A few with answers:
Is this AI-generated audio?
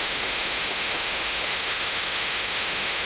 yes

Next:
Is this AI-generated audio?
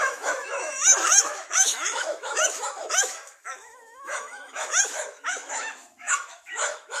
yes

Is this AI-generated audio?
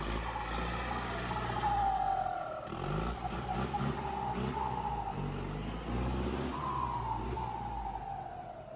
no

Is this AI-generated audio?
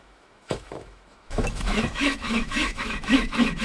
yes